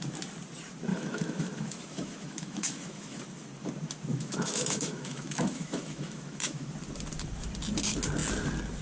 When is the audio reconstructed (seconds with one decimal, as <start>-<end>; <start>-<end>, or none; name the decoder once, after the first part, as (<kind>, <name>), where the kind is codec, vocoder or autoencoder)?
0.9-3.2 (autoencoder, DAC-VAE); 4.1-6.7